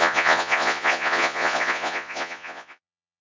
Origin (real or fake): fake